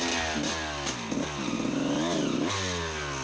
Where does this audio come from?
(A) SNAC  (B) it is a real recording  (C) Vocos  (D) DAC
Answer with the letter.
B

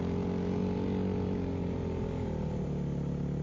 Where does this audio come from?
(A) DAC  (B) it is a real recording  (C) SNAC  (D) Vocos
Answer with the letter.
B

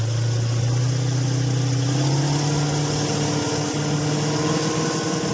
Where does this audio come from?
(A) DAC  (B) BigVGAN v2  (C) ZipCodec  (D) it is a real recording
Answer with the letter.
D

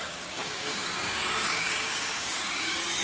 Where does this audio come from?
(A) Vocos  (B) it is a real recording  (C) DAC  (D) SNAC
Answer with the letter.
C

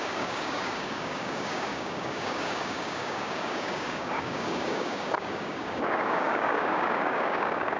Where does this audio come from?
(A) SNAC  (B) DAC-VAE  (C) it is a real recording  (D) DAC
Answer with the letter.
D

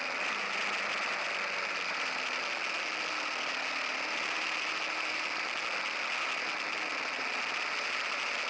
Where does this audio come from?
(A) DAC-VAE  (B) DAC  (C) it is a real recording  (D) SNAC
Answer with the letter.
C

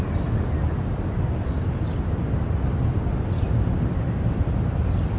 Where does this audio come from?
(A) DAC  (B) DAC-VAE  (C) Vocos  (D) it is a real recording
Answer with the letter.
D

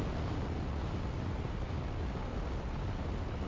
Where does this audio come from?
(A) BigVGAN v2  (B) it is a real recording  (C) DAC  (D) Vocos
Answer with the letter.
B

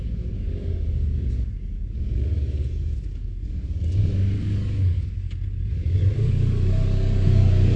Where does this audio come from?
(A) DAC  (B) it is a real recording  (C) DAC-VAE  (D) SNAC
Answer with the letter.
A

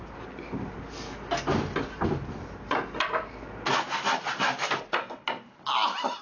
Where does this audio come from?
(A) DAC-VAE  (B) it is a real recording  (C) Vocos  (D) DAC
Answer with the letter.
B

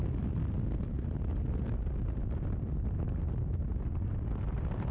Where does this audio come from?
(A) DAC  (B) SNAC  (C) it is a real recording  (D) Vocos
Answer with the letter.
C